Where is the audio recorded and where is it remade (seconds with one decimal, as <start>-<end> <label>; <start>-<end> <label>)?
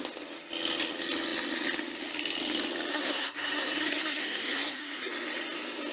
0.0-2.9 recorded; 2.9-5.1 remade; 5.1-5.9 recorded